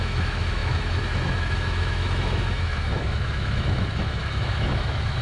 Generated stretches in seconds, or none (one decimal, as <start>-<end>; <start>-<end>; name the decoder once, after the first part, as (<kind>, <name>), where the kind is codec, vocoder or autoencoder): 0.0-5.2 (autoencoder, DAC-VAE)